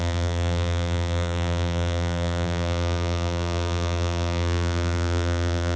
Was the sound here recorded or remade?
remade